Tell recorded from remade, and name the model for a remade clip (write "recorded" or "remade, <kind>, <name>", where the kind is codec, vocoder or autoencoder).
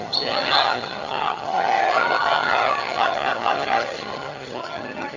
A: remade, vocoder, HiFi-GAN